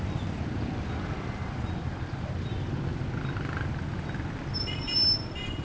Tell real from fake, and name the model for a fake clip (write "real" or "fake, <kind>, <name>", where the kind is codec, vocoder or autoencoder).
fake, vocoder, BigVGAN v2